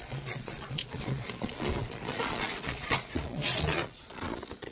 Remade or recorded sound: remade